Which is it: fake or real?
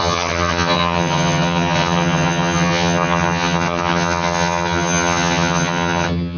fake